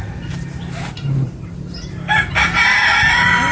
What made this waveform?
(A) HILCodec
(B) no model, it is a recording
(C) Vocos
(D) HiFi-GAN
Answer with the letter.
B